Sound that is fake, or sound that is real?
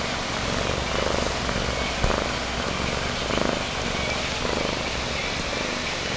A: real